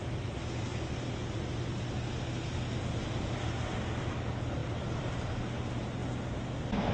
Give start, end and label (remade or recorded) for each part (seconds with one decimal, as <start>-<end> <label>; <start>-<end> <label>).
0.0-4.6 recorded; 4.6-5.1 remade; 5.1-6.0 recorded; 6.0-6.5 remade; 6.5-6.9 recorded